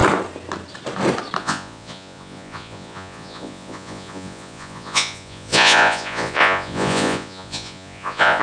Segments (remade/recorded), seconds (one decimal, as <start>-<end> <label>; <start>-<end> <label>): 0.0-1.4 recorded; 1.4-8.4 remade